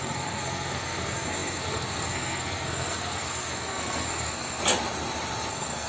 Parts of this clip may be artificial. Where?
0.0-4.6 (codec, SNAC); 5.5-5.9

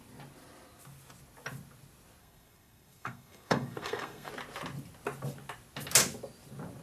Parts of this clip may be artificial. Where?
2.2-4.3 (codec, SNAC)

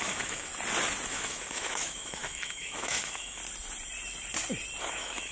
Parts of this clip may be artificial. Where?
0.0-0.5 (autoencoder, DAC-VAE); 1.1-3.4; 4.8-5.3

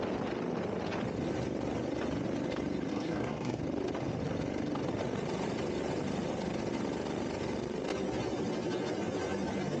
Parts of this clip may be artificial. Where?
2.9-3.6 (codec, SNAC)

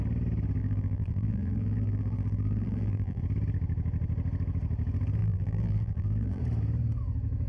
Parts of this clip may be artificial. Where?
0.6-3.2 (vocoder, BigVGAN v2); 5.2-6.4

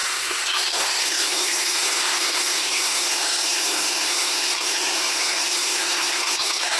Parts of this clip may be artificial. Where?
0.0-6.8 (codec, SNAC)

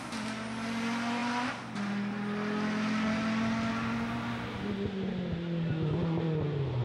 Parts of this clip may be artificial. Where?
none